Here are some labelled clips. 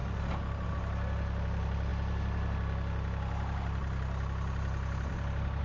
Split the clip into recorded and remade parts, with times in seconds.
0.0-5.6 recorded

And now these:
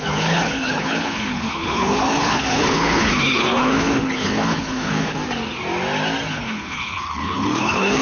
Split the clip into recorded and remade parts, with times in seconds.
0.0-5.2 remade; 5.2-6.3 recorded; 6.3-8.0 remade